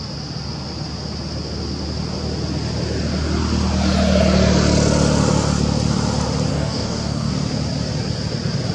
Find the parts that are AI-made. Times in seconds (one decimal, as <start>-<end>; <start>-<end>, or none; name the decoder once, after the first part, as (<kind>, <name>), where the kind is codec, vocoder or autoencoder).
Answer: 6.5-7.3 (codec, DAC)